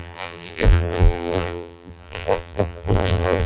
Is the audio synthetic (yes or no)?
yes